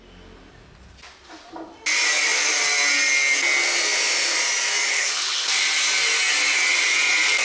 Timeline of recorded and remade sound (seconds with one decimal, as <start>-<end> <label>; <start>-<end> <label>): 0.0-4.9 recorded; 4.9-5.5 remade; 5.5-7.4 recorded

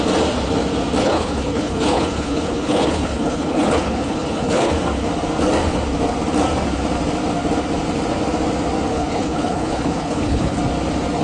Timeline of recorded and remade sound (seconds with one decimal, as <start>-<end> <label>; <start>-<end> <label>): 0.0-1.0 recorded; 1.0-4.7 remade; 4.7-8.9 recorded; 8.9-10.6 remade; 10.6-11.2 recorded

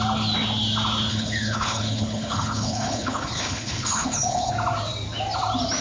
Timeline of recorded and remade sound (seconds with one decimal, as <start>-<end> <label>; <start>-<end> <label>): 0.0-1.1 recorded; 1.1-4.5 remade; 4.5-5.8 recorded